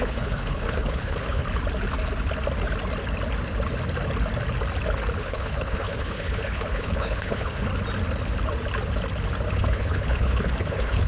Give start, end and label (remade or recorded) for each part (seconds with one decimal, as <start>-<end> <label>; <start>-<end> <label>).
0.0-1.4 remade; 1.4-5.2 recorded; 5.2-7.7 remade; 7.7-9.5 recorded; 9.5-11.1 remade